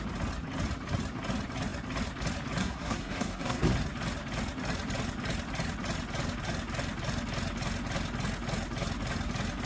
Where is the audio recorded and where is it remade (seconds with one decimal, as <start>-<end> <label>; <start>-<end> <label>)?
0.0-2.6 recorded; 2.6-3.6 remade; 3.6-9.7 recorded